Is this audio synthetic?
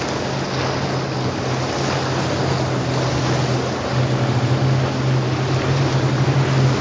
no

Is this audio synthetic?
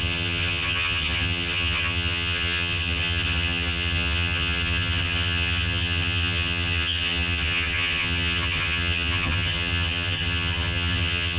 yes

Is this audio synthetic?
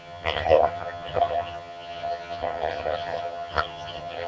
yes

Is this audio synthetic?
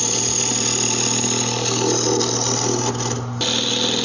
no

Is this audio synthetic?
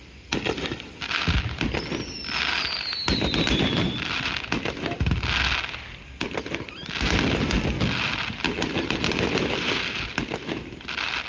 no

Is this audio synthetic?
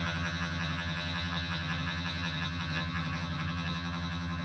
yes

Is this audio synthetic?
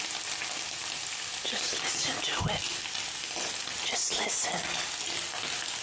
no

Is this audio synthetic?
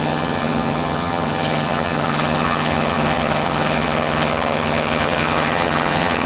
yes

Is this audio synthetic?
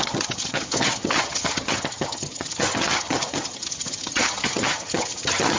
yes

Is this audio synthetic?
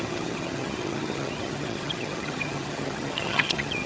yes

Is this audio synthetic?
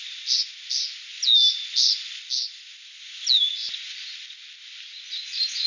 no